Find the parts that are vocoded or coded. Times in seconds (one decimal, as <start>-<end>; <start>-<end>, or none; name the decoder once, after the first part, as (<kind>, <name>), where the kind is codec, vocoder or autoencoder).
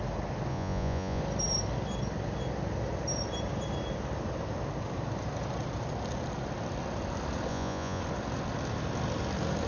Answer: 0.5-1.2 (vocoder, Vocos); 7.5-8.0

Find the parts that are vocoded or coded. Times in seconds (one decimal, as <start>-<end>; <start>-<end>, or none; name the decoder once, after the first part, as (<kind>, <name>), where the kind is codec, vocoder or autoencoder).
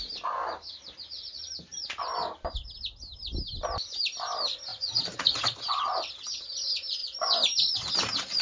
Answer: 4.7-6.1 (vocoder, Vocos)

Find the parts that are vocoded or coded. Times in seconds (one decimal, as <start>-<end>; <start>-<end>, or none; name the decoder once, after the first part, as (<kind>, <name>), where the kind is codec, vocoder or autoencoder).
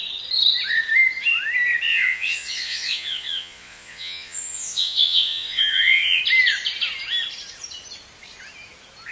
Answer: 1.9-6.2 (vocoder, Vocos)